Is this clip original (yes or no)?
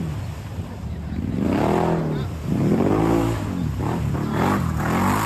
yes